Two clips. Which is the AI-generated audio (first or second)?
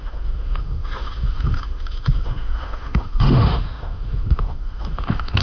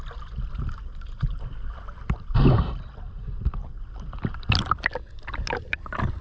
first